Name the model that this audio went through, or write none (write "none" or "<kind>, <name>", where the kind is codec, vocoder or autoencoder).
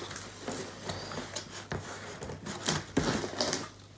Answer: none